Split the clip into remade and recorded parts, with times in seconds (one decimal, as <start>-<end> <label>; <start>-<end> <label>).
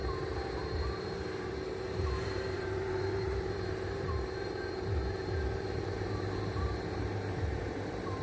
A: 0.0-0.5 recorded; 0.5-8.2 remade